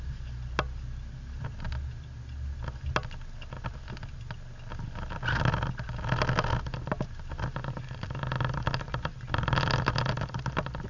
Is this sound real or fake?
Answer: real